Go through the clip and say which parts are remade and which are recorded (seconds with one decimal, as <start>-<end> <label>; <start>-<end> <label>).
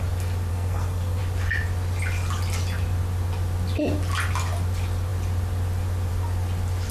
0.0-0.5 recorded; 0.5-1.2 remade; 1.2-6.9 recorded